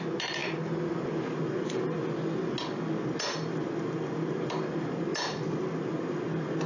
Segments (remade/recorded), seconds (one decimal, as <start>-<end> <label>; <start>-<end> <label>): 0.0-6.7 recorded